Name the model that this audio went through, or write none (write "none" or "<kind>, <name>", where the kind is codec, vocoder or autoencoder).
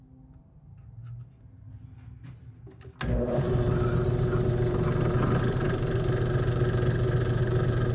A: none